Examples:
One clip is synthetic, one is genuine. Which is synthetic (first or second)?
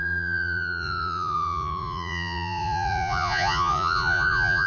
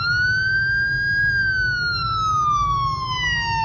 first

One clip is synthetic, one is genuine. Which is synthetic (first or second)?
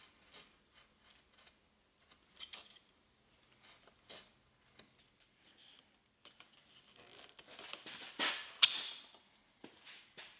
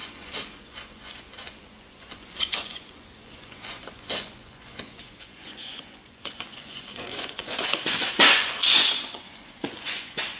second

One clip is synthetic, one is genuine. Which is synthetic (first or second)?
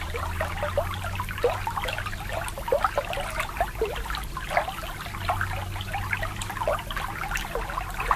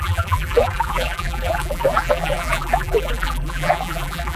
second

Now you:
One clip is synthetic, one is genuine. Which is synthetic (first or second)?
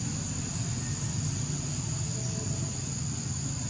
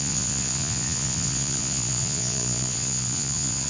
second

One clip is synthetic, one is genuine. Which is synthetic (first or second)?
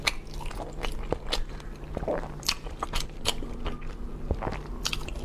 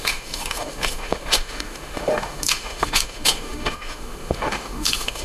second